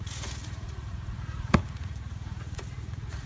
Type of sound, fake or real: fake